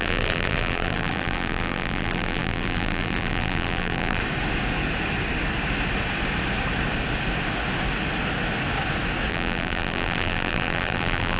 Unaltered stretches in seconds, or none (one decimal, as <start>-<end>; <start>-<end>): 4.2-9.3